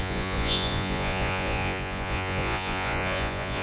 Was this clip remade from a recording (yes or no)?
yes